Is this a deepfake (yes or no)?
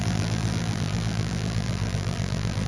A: yes